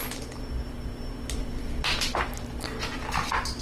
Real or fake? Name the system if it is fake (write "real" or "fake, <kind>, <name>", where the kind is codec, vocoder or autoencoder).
real